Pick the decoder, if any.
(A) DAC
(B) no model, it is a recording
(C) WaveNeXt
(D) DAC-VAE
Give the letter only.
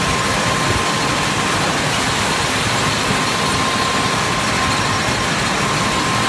B